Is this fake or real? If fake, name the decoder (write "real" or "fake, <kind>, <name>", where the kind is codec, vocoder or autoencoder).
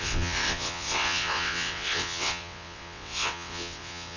fake, vocoder, WaveNeXt